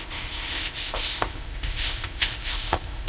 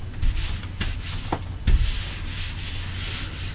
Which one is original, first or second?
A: second